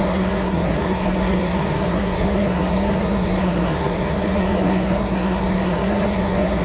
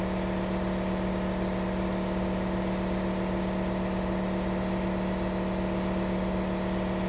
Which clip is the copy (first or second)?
first